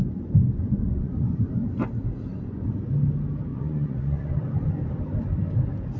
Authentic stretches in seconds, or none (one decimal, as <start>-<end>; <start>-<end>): 0.0-0.5; 1.5-2.3; 2.8-3.5; 4.4-6.0